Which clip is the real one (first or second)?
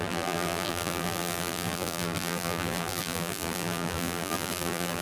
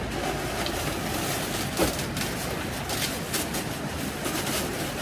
second